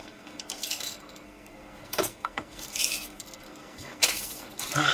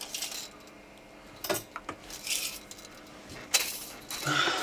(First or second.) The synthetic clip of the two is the first